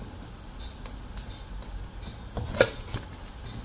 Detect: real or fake real